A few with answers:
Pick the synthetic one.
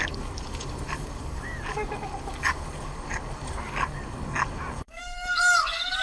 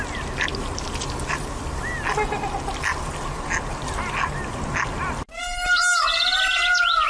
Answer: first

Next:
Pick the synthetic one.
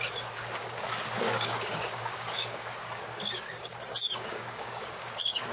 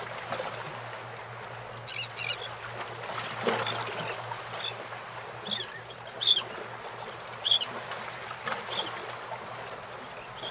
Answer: first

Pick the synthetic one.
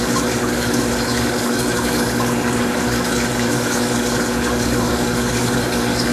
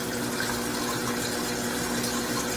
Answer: first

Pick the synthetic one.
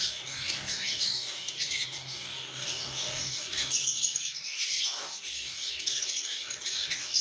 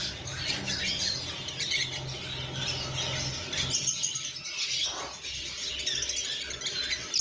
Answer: first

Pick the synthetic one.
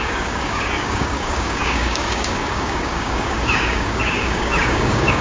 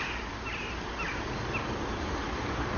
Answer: first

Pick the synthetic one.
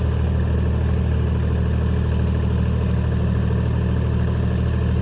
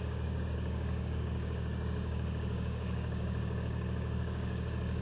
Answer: second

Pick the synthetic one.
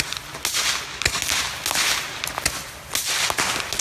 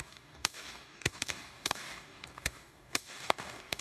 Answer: second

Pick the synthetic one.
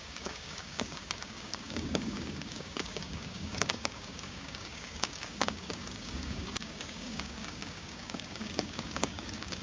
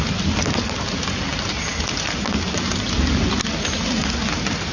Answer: first